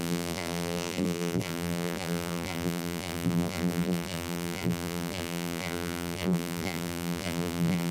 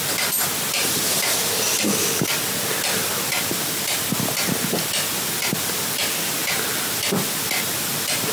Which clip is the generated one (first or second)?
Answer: first